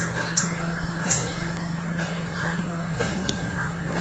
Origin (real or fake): fake